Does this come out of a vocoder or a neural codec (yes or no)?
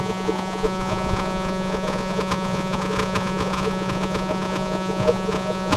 yes